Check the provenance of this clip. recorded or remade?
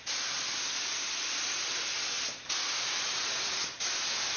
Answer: recorded